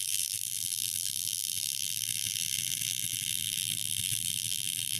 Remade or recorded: remade